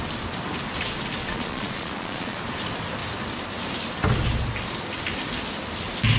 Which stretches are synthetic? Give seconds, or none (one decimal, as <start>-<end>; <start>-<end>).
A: 1.2-2.4